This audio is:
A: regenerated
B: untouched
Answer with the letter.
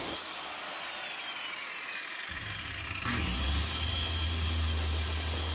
B